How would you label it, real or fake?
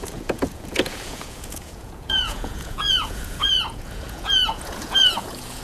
fake